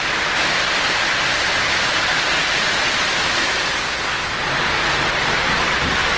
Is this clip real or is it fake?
real